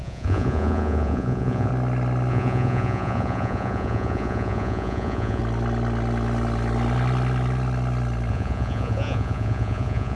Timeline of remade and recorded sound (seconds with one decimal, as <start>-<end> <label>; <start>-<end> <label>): 0.0-1.7 remade; 1.7-2.3 recorded; 2.3-5.4 remade; 5.4-8.3 recorded; 8.3-10.2 remade